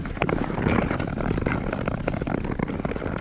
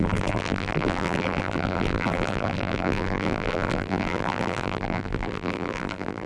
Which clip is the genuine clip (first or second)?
first